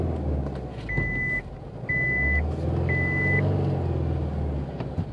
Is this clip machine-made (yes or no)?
no